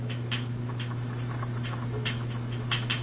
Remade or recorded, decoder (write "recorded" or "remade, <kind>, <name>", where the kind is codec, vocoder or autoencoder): remade, autoencoder, DAC-VAE